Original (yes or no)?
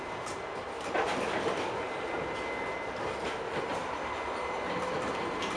yes